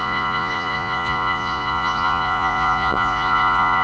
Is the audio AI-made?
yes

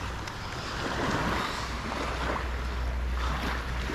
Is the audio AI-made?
no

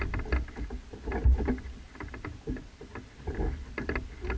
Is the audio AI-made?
no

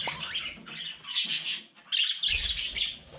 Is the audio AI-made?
no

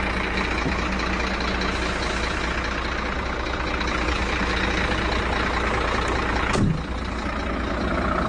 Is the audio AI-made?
no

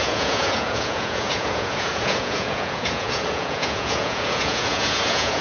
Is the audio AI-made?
yes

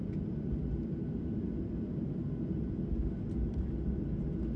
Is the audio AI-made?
no